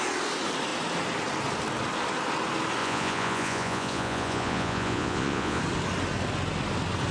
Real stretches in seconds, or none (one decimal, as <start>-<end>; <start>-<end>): 0.0-2.8; 5.6-7.1